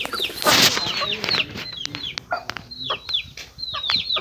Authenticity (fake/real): real